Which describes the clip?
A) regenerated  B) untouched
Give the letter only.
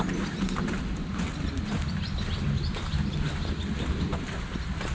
B